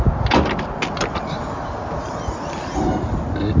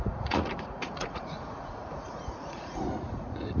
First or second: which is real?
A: first